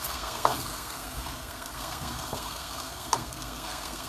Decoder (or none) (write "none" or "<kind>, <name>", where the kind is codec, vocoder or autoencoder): codec, SNAC